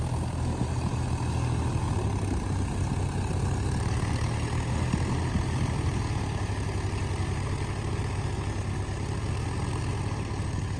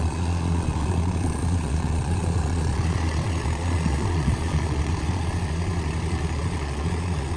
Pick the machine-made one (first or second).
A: second